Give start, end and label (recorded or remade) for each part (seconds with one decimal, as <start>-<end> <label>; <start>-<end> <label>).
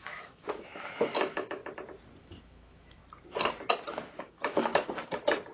0.0-1.6 remade; 1.6-2.2 recorded; 2.2-3.0 remade; 3.0-4.2 recorded; 4.2-4.7 remade; 4.7-5.5 recorded